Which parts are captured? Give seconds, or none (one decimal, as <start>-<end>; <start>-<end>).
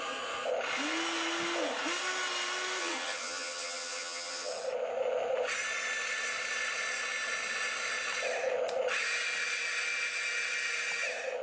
0.0-2.8; 4.5-11.4